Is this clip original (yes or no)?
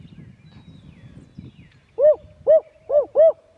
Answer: yes